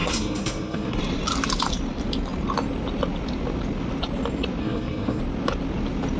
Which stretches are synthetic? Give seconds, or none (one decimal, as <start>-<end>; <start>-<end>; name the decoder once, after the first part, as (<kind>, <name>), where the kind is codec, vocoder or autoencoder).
0.0-1.0 (codec, SNAC); 4.6-5.2